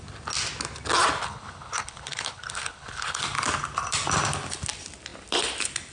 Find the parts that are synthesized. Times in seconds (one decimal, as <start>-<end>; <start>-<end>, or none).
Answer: 1.2-3.2